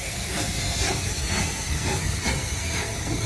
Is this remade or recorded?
remade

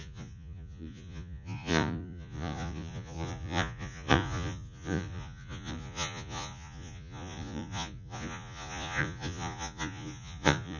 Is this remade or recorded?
remade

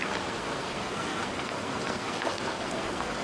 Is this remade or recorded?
remade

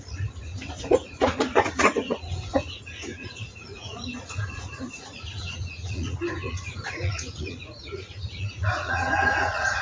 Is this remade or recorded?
remade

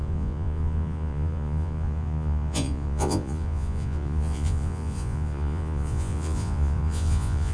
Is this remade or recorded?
remade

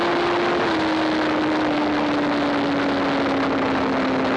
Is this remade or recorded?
recorded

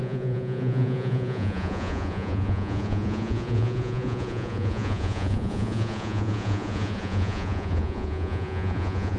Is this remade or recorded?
remade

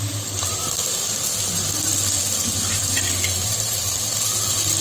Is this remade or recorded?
recorded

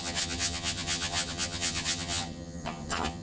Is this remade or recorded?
remade